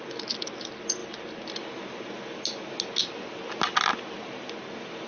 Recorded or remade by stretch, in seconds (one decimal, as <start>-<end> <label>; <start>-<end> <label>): 0.0-5.1 recorded